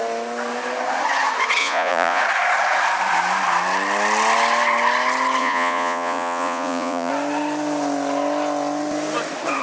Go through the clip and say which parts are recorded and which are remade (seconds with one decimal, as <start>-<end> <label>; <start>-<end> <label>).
0.0-1.6 recorded; 1.6-2.2 remade; 2.2-5.4 recorded; 5.4-7.1 remade; 7.1-9.6 recorded

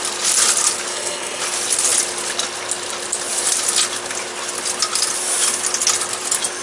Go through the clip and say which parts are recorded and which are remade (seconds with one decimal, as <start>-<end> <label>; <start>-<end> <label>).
0.0-0.9 recorded; 0.9-1.4 remade; 1.4-6.6 recorded

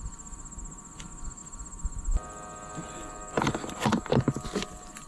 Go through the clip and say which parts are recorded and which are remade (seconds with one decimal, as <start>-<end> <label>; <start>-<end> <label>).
0.0-5.1 recorded

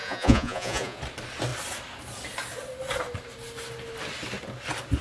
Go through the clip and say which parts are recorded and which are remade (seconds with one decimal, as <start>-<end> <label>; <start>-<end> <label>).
0.0-1.0 remade; 1.0-5.0 recorded